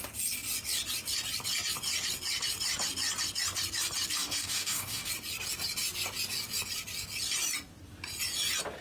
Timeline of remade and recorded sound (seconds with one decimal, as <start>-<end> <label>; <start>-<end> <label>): 0.0-4.2 recorded; 4.2-5.1 remade; 5.1-8.8 recorded